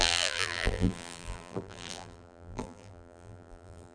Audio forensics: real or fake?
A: fake